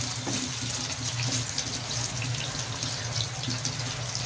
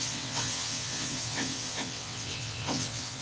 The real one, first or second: first